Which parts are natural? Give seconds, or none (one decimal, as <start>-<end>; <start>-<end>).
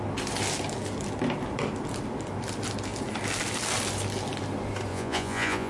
0.0-4.9